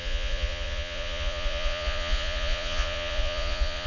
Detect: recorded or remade remade